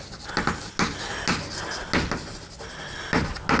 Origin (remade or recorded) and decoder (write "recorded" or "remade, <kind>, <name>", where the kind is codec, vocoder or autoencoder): recorded